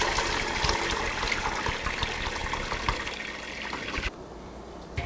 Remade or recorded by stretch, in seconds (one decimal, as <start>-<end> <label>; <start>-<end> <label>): 0.0-5.1 recorded